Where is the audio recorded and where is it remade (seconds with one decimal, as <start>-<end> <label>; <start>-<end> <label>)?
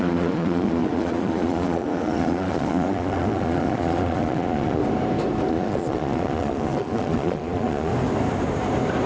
0.0-4.8 remade; 4.8-5.5 recorded; 5.5-7.9 remade; 7.9-9.1 recorded